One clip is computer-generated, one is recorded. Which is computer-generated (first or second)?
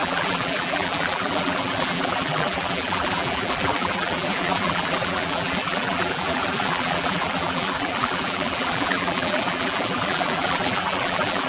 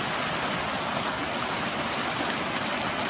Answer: first